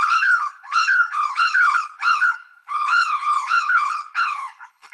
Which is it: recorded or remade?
remade